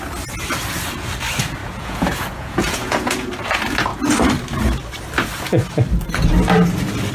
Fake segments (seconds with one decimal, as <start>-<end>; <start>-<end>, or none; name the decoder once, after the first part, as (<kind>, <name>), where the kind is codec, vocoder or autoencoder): 1.6-3.3 (vocoder, Vocos)